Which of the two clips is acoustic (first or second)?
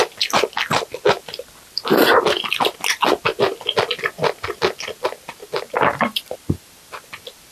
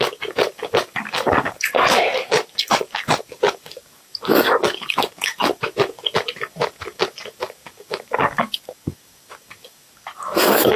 first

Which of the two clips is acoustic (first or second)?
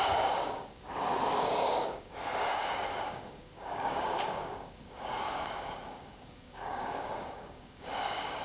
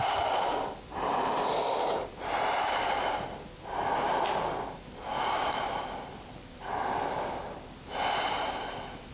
second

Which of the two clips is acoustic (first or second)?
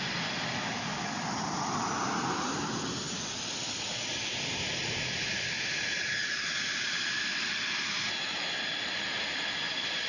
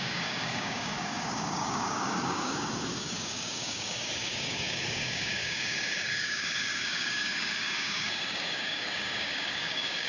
first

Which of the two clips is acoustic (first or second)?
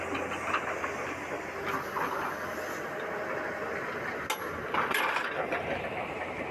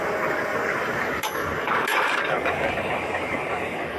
first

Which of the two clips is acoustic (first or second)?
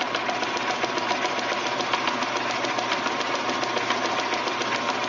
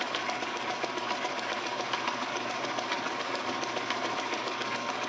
first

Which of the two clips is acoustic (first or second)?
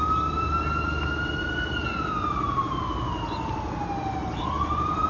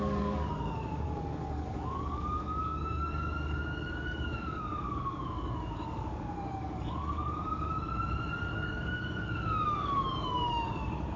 first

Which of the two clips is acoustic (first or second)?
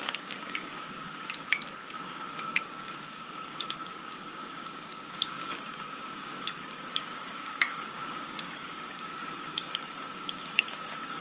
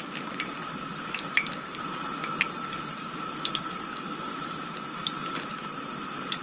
second